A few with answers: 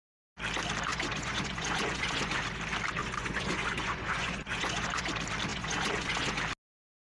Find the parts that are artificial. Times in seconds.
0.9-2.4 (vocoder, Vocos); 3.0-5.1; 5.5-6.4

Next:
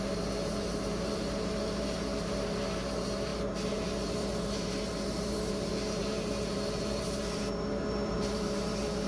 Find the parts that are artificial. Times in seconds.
0.0-9.1 (vocoder, BigVGAN v2)

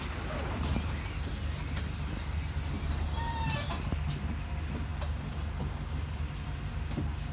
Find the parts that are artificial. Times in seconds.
none

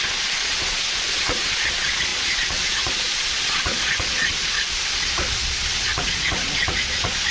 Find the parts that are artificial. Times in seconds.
0.0-7.3 (vocoder, Vocos)